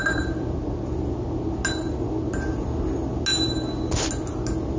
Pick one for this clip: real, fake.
real